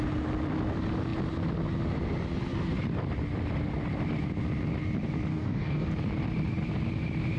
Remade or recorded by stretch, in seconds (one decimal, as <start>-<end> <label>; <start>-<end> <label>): 0.0-5.3 recorded; 5.3-5.9 remade; 5.9-7.4 recorded